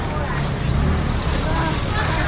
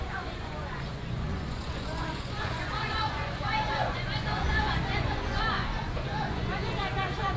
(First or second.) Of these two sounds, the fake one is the second